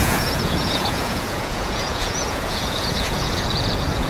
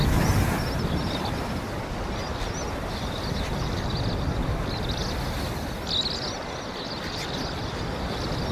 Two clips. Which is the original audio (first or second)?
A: second